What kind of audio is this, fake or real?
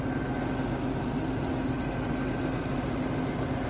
real